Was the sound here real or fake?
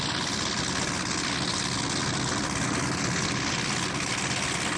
real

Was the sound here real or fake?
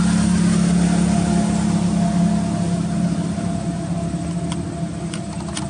real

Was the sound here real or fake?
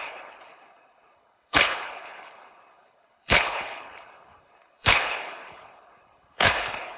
fake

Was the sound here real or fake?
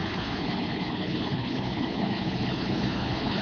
fake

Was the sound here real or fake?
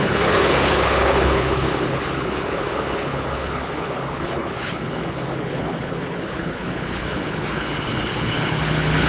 fake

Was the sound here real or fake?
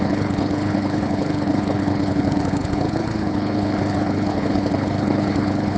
fake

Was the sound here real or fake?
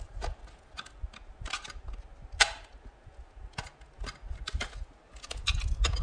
real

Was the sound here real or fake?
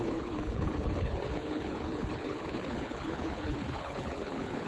fake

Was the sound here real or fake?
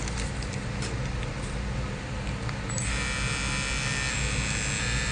real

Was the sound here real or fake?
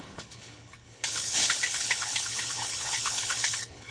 fake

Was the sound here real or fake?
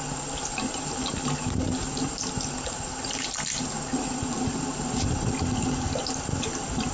real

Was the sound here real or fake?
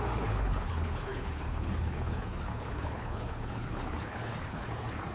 fake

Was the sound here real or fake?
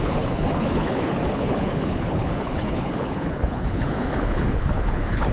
fake